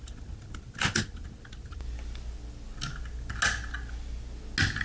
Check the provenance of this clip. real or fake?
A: real